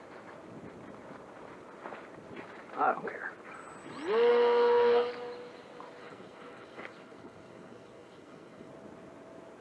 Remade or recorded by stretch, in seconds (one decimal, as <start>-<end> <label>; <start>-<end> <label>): 0.0-4.3 recorded; 4.3-5.1 remade; 5.1-6.0 recorded; 6.0-8.7 remade; 8.7-9.6 recorded